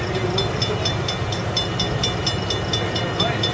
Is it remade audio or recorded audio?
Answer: recorded